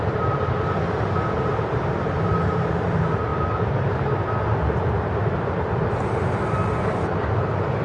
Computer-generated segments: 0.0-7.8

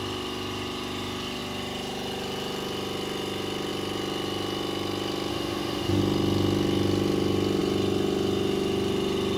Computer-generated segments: 5.3-6.0

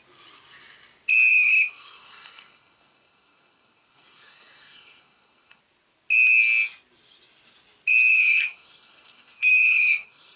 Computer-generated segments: 1.3-5.6; 8.1-10.4

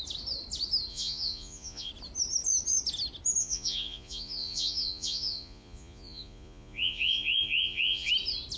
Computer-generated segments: 0.9-1.9; 3.4-8.1

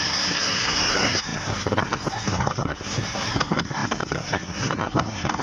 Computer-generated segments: 0.0-5.4

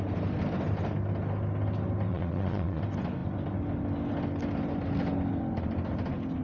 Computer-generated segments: 2.1-2.8

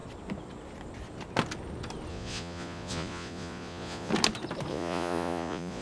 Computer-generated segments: 2.1-4.1; 4.7-5.8